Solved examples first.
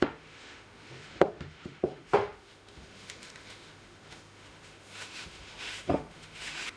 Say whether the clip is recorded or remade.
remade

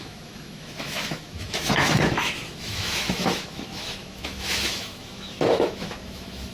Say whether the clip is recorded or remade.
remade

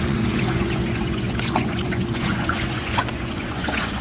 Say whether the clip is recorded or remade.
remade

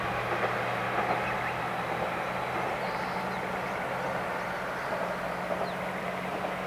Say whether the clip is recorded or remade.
recorded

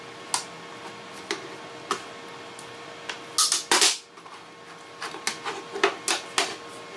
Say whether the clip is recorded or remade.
recorded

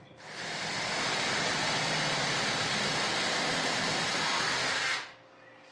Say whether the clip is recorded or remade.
recorded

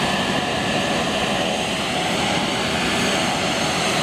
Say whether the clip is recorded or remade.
remade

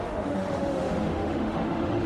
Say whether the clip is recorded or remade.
remade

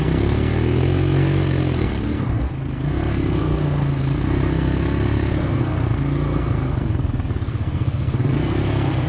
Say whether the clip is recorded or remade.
remade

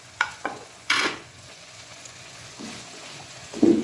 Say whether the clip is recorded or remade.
remade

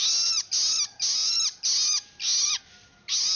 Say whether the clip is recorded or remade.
recorded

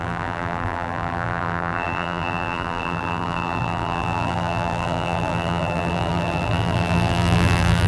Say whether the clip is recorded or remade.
remade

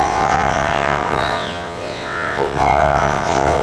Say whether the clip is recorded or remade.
remade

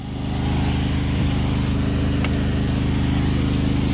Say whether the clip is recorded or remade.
recorded